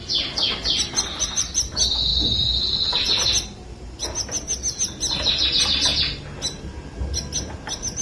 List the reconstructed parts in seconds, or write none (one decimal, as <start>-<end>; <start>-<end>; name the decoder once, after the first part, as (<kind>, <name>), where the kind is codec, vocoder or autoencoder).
0.0-0.4 (vocoder, BigVGAN v2); 1.2-4.0; 5.4-8.0